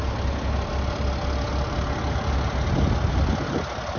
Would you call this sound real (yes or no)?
yes